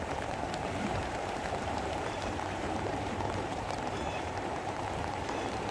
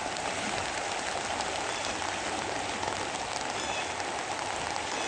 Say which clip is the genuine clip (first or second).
second